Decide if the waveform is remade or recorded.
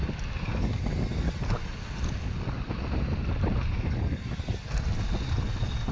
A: recorded